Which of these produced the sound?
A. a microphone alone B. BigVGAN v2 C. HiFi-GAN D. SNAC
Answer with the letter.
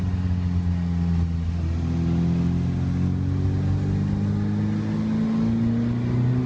A